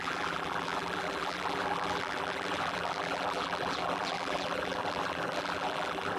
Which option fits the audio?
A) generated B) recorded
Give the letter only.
A